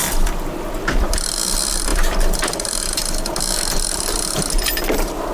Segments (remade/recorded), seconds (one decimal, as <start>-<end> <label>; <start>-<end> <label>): 0.0-5.3 remade